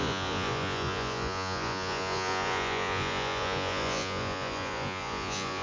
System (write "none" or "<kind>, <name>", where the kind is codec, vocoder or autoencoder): vocoder, Vocos